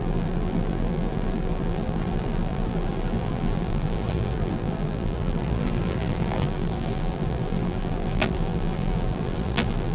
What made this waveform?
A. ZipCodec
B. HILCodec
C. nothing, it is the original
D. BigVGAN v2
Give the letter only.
D